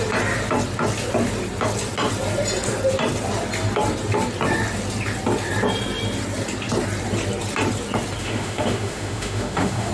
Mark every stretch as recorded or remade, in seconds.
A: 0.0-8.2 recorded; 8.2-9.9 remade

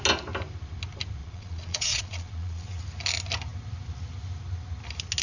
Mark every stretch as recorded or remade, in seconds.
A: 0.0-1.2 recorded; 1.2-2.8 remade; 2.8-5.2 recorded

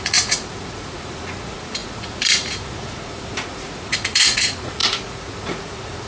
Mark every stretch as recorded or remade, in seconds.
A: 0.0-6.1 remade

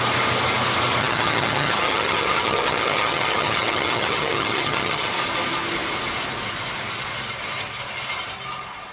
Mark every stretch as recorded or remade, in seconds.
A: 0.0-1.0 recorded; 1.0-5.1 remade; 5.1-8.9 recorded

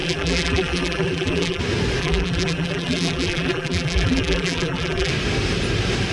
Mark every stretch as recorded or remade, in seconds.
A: 0.0-1.6 remade; 1.6-2.0 recorded; 2.0-5.1 remade; 5.1-6.1 recorded

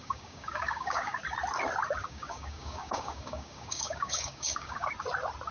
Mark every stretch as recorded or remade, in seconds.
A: 0.0-1.2 remade; 1.2-2.0 recorded; 2.0-4.9 remade; 4.9-5.5 recorded

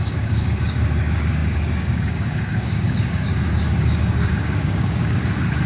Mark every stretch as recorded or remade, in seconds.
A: 0.0-5.7 remade